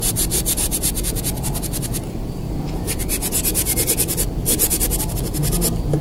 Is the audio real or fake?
real